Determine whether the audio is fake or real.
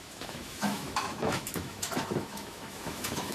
fake